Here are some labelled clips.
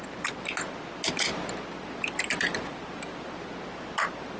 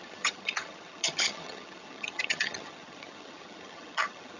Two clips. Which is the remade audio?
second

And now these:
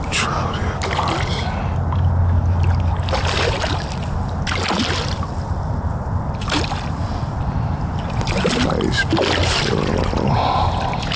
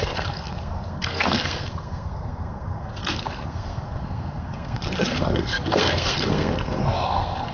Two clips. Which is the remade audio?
second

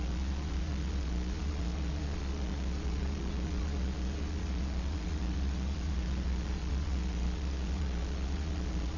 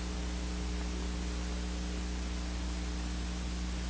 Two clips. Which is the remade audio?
first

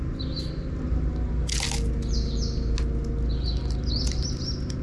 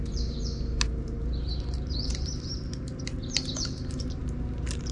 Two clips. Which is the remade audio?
second